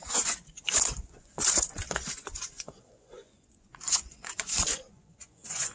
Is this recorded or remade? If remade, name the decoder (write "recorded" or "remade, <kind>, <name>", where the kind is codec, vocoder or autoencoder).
remade, vocoder, Vocos